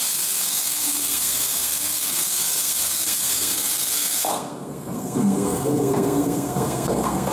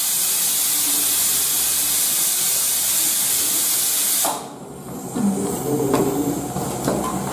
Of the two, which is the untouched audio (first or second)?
second